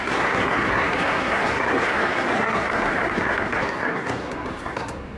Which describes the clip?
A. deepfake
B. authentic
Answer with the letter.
A